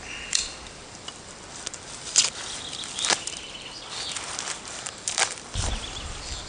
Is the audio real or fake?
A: fake